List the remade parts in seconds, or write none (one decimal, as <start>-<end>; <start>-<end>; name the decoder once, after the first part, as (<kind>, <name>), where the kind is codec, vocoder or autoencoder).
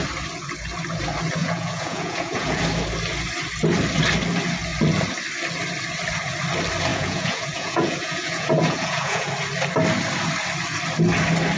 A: 1.4-2.6 (vocoder, Vocos); 6.9-9.3